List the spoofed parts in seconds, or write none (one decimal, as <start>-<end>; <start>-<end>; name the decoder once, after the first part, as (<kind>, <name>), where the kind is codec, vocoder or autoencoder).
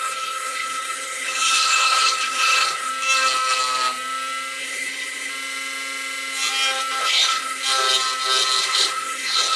0.0-2.9 (codec, HILCodec); 4.6-5.3; 7.0-7.6; 8.6-9.6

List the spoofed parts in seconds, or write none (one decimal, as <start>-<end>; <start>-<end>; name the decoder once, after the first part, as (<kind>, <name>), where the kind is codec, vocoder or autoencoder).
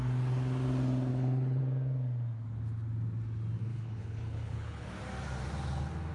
1.1-1.6 (codec, HILCodec); 3.7-4.9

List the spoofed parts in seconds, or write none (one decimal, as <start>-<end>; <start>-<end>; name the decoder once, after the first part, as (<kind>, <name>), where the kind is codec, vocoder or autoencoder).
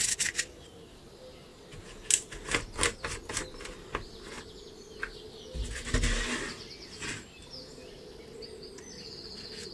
none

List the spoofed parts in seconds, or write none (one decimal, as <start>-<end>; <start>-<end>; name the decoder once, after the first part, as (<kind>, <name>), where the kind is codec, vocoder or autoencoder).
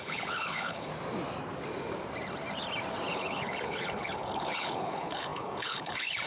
0.0-0.9 (codec, HILCodec); 3.1-6.3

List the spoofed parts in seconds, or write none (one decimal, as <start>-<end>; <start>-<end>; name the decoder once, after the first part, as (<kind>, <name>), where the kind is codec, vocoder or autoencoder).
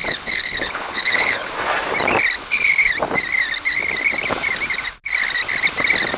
0.0-1.5 (codec, HILCodec); 2.4-2.9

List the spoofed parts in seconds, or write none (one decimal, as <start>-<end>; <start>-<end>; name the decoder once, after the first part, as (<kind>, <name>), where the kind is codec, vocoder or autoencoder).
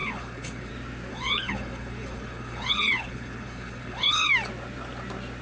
0.0-0.7 (codec, HILCodec); 1.1-4.3